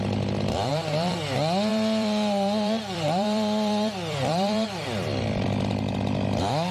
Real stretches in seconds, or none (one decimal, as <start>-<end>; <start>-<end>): 0.0-0.7; 1.2-1.7; 5.7-6.7